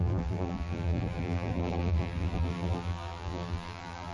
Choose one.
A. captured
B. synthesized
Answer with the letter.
B